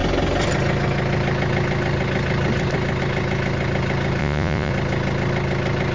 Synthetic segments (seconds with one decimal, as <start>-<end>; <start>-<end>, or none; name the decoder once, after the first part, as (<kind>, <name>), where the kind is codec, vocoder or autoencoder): 4.2-4.7 (vocoder, Vocos)